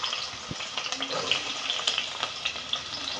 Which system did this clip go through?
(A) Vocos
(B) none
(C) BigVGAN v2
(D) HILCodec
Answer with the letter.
B